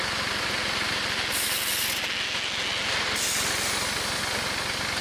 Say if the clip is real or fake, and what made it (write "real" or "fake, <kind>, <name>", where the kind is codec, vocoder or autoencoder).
real